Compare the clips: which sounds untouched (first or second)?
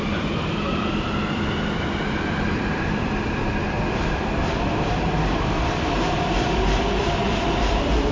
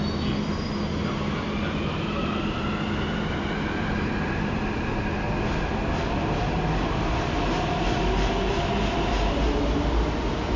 second